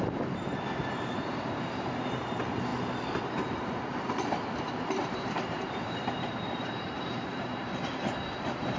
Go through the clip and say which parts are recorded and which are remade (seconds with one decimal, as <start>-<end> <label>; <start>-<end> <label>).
0.0-2.7 remade; 2.7-3.2 recorded; 3.2-8.8 remade